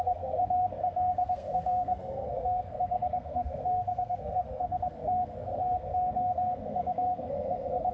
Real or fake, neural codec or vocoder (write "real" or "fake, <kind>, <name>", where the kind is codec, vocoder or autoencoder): fake, codec, SNAC